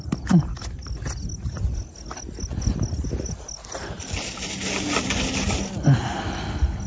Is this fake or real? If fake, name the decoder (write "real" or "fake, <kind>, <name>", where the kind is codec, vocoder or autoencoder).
real